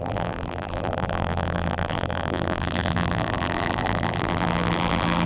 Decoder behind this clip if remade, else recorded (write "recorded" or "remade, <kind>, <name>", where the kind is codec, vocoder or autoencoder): remade, vocoder, BigVGAN v2